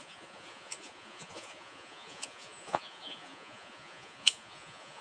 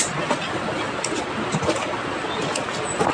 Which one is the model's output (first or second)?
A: first